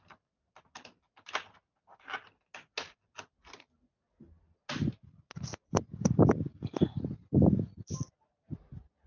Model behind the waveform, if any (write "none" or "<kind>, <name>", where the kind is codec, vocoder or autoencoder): none